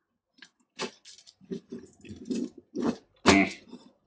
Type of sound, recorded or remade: recorded